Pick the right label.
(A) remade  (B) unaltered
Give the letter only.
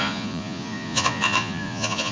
A